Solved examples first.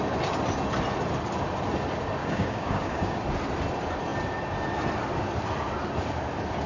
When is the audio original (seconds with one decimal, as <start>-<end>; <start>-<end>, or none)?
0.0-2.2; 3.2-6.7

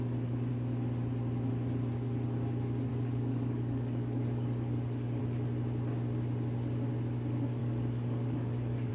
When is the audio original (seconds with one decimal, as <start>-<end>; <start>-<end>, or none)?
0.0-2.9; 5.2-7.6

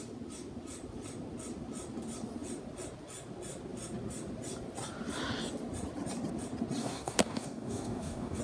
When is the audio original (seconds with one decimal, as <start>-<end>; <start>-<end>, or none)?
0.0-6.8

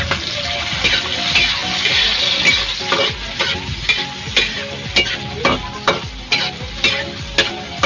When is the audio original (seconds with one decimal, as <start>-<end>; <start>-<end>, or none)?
0.0-7.9

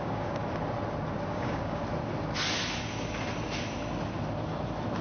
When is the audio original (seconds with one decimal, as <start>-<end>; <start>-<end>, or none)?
0.4-1.3; 1.8-5.0

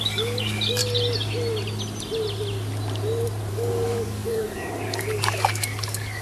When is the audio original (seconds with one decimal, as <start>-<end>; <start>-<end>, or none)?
0.8-3.5

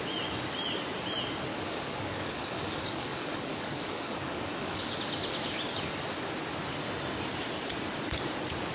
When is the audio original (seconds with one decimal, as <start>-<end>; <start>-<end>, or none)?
0.0-1.5; 5.0-8.7

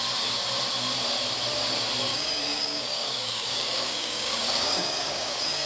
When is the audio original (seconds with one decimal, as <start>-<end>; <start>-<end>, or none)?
0.0-2.1